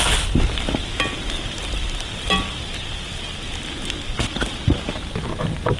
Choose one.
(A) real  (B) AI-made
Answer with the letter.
A